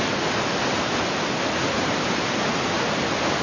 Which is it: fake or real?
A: real